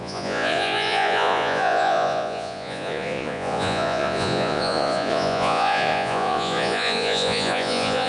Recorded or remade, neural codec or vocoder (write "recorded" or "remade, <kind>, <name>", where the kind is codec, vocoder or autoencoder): remade, vocoder, Vocos